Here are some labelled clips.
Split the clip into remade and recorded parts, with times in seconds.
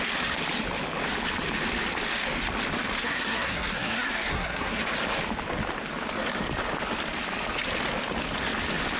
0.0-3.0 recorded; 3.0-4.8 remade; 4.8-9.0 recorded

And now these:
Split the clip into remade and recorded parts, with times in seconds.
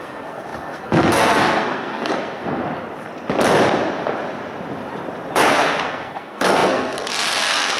0.0-2.6 remade; 2.6-5.5 recorded; 5.5-7.8 remade